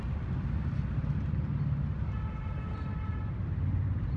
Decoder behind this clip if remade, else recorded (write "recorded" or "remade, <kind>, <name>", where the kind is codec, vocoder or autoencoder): recorded